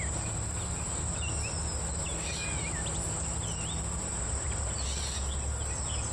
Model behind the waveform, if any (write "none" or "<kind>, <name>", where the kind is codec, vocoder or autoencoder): none